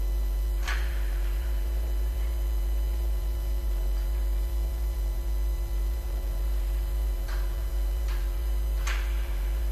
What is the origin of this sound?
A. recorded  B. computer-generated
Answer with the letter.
B